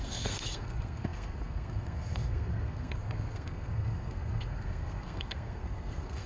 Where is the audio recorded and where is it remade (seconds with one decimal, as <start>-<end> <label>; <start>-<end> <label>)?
0.0-6.3 remade